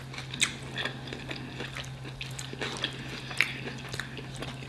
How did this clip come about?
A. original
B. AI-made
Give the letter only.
A